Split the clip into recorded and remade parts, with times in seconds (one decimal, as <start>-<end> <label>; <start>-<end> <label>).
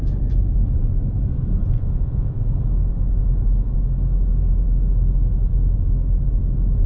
0.0-1.6 recorded; 1.6-2.4 remade; 2.4-6.9 recorded